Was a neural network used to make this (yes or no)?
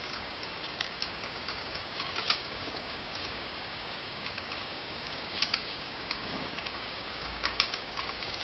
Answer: yes